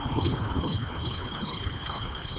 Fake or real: fake